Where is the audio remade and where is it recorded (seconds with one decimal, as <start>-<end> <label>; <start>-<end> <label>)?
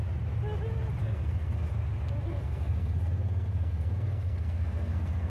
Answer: 0.0-1.0 recorded; 1.0-1.7 remade; 1.7-2.3 recorded; 2.3-5.3 remade